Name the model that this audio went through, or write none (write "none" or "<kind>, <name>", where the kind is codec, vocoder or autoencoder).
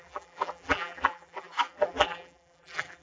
vocoder, BigVGAN v2